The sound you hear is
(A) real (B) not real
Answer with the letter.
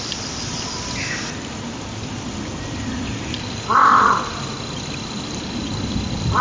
A